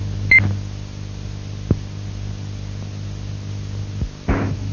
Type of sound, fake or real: real